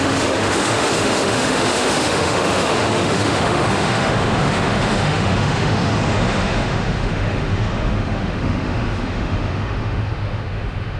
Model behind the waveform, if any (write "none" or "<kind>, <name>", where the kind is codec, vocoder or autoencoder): autoencoder, DAC-VAE